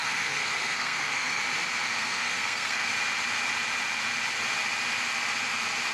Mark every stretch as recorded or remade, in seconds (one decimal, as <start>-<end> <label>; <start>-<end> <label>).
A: 0.0-1.4 remade; 1.4-1.9 recorded; 1.9-2.9 remade; 2.9-5.9 recorded